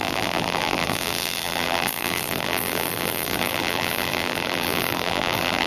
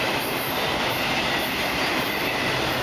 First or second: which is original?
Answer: second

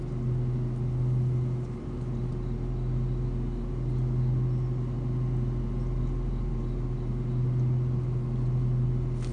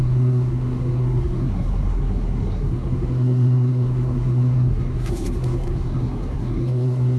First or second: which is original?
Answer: first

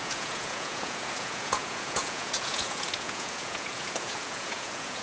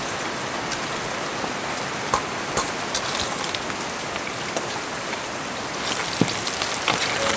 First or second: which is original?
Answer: second